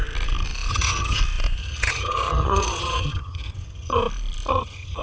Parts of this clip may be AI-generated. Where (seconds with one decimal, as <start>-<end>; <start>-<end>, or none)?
0.7-1.2; 1.6-4.0; 4.5-5.0